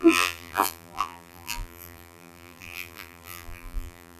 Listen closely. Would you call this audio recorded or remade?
remade